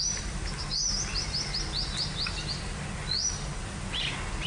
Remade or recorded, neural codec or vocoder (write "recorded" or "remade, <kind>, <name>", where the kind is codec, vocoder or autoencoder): recorded